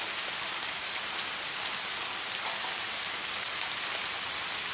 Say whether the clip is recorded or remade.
recorded